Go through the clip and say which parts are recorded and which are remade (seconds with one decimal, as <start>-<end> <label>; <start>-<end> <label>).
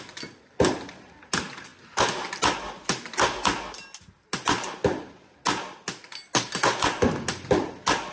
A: 0.0-8.1 recorded